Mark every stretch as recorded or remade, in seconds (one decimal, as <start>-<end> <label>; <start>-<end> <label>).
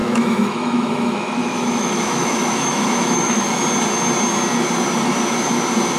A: 0.0-3.6 remade; 3.6-6.0 recorded